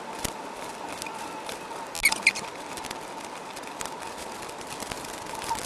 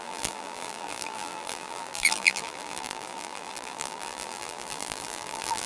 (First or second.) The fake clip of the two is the second